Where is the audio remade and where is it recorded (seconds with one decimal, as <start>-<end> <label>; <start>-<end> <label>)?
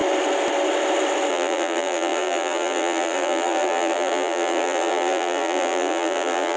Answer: 0.0-1.3 recorded; 1.3-6.6 remade